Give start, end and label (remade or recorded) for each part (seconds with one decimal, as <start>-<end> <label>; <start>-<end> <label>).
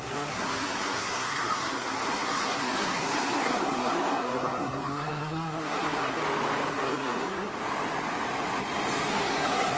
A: 0.0-6.2 remade; 6.2-6.7 recorded; 6.7-7.5 remade; 7.5-9.1 recorded; 9.1-9.8 remade